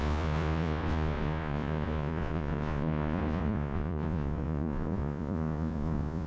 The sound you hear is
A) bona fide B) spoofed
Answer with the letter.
B